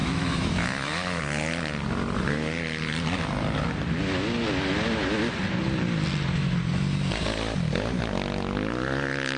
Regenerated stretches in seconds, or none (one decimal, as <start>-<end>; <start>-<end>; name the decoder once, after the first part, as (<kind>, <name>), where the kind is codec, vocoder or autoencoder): 0.0-1.2 (autoencoder, DAC-VAE)